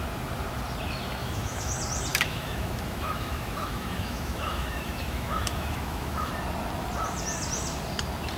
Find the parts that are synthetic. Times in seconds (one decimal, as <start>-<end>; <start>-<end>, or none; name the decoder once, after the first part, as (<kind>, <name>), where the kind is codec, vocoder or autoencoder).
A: 1.2-1.7 (autoencoder, DAC-VAE); 2.1-6.3